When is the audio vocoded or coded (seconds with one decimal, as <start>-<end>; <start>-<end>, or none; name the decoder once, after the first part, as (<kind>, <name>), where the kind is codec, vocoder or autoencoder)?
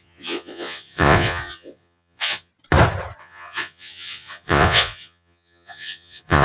0.0-2.5 (vocoder, Vocos); 3.2-6.4